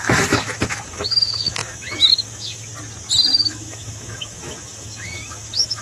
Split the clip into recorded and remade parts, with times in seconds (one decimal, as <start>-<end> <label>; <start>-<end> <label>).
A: 0.0-2.7 remade; 2.7-3.5 recorded; 3.5-5.8 remade